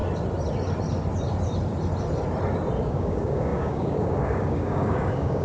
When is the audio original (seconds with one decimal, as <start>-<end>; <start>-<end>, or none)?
0.0-2.8